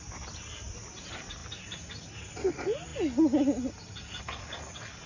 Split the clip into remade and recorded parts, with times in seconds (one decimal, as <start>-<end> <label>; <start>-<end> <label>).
0.0-5.1 recorded